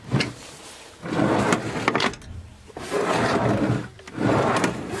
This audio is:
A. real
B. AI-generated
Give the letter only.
A